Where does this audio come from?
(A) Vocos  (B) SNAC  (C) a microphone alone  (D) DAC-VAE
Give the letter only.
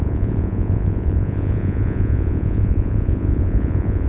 A